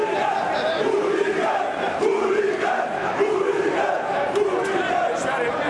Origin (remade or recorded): remade